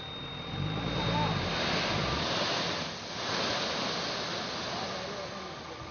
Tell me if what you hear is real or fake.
fake